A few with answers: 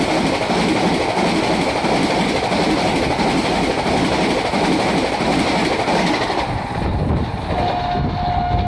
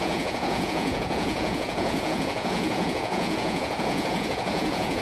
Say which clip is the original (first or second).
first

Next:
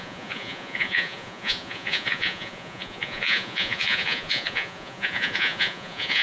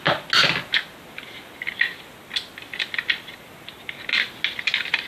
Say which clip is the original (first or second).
second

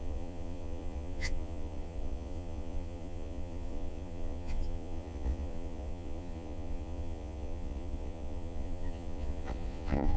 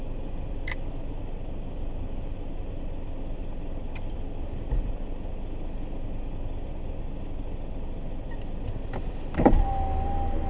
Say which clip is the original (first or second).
second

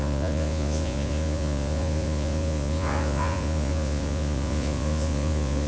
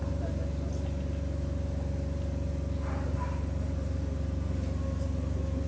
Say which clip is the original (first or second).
second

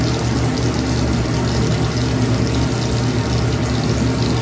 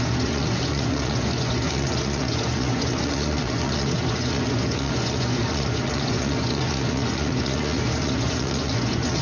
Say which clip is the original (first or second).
first